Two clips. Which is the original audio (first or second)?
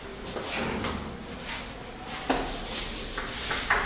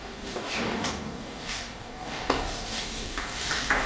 first